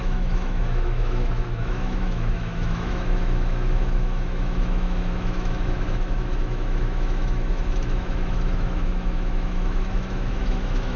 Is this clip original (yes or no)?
no